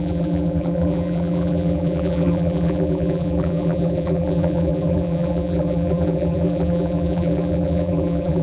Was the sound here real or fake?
fake